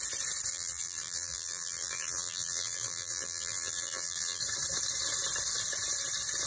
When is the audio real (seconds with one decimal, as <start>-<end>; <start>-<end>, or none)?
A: 0.0-0.5; 4.4-6.5